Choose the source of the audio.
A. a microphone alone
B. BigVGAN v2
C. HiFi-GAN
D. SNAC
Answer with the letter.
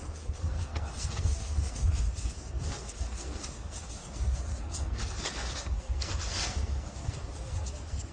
D